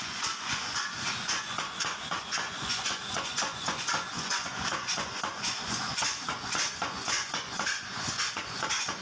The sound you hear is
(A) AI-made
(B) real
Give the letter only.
A